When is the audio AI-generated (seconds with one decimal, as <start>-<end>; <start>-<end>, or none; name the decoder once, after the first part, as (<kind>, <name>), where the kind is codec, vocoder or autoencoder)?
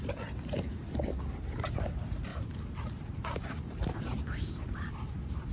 0.0-5.5 (vocoder, BigVGAN v2)